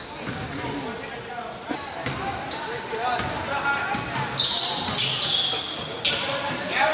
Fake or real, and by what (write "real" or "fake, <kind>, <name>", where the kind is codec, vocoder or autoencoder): real